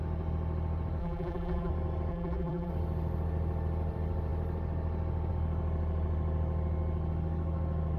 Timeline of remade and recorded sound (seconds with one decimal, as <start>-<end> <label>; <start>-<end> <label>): 0.0-1.0 recorded; 1.0-1.7 remade; 1.7-2.1 recorded; 2.1-2.7 remade; 2.7-8.0 recorded